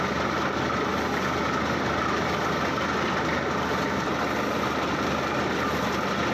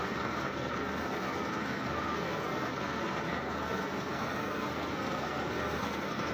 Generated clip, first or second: second